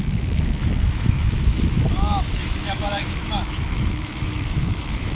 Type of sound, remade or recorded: remade